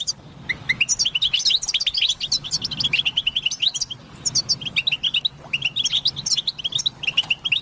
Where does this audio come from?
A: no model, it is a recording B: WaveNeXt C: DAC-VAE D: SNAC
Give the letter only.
A